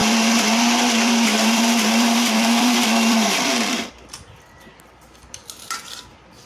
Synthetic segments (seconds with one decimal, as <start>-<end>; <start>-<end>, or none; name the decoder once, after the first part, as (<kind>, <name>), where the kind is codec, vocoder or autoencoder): 0.0-3.9 (vocoder, BigVGAN v2)